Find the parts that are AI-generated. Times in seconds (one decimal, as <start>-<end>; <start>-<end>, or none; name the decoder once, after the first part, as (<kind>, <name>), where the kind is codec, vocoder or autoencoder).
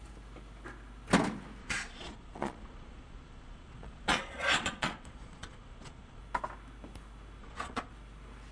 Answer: 1.6-6.2 (vocoder, Vocos); 7.4-7.9